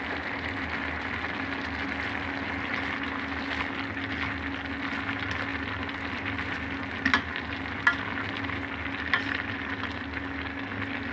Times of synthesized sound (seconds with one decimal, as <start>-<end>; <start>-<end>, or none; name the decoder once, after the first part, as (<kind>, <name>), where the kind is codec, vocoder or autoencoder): none